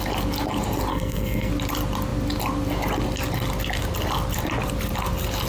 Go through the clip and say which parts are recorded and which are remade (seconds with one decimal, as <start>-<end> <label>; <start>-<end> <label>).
0.0-0.9 recorded; 0.9-1.5 remade; 1.5-5.5 recorded